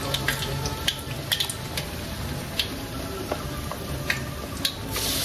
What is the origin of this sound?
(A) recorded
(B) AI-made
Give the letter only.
A